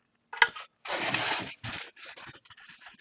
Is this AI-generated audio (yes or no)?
no